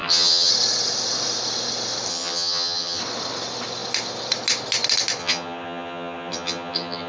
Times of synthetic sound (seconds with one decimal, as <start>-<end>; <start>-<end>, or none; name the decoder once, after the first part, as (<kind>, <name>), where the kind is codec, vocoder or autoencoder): 0.0-0.5 (vocoder, HiFi-GAN); 2.1-3.0; 5.2-7.1